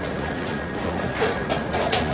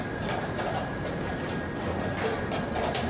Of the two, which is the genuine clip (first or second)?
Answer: second